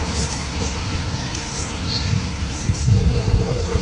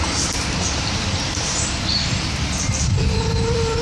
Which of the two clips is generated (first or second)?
first